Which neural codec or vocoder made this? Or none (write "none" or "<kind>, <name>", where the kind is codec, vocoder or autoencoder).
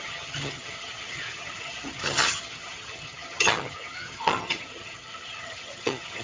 vocoder, HiFi-GAN